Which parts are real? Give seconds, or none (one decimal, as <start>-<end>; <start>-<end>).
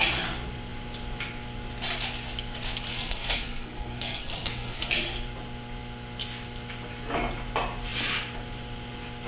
0.0-2.9; 4.9-9.3